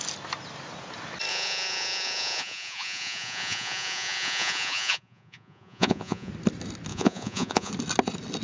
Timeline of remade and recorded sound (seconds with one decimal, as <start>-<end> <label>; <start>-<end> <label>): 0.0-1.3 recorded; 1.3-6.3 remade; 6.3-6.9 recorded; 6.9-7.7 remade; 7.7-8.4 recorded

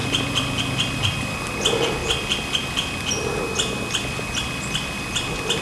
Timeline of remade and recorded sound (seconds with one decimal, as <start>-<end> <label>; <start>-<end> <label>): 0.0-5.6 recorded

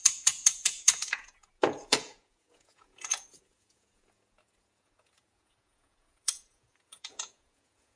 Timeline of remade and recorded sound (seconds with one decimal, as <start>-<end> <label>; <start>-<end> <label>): 0.0-8.0 remade

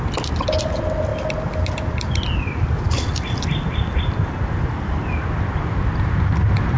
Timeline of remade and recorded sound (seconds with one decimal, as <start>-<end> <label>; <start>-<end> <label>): 0.0-6.8 recorded